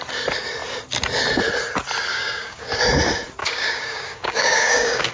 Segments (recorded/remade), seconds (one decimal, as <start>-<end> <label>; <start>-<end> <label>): 0.0-2.1 recorded; 2.1-2.8 remade; 2.8-3.4 recorded; 3.4-5.1 remade